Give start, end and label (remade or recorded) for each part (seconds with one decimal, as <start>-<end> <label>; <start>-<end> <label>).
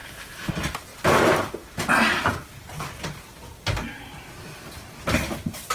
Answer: 0.0-0.5 remade; 0.5-5.7 recorded